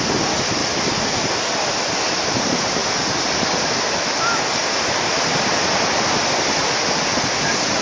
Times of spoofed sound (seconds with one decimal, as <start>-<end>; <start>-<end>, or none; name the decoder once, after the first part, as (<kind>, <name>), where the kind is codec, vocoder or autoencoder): 0.0-0.6 (vocoder, BigVGAN v2); 2.4-2.8